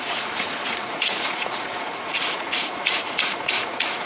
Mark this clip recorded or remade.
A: remade